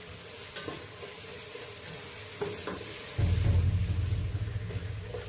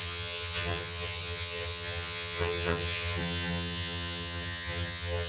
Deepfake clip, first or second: second